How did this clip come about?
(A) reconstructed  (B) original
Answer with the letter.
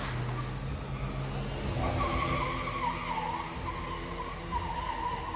B